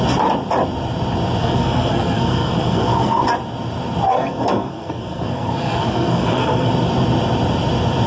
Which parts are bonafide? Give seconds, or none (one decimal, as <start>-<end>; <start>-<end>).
0.0-1.4; 3.2-4.1; 6.7-8.1